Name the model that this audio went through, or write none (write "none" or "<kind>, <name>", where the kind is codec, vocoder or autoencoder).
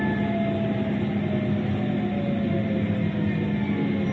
none